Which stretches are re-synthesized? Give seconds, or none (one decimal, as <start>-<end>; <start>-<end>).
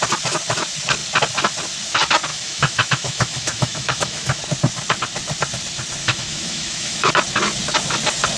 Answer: 2.3-4.4; 6.0-7.1